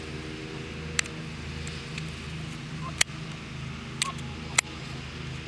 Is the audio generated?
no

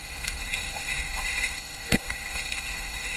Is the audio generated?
yes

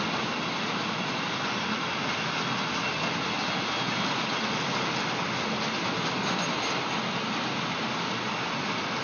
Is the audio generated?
no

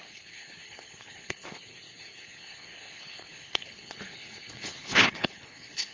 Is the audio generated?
yes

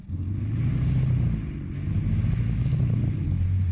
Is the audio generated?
no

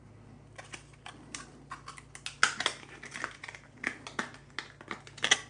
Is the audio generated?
no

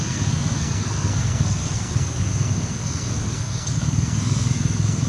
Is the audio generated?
yes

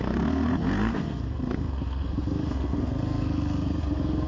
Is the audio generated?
yes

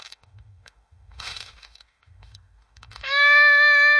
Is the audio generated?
yes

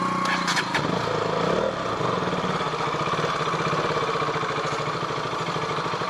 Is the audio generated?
no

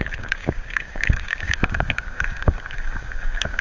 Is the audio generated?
yes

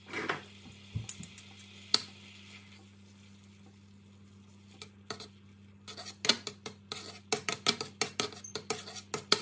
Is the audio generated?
no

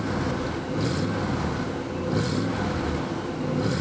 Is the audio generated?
no